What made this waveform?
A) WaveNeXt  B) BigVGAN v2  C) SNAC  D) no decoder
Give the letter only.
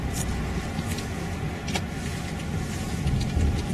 D